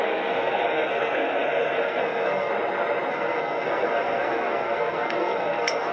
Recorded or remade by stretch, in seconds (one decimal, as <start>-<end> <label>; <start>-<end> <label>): 0.0-2.5 remade; 2.5-3.1 recorded; 3.1-5.9 remade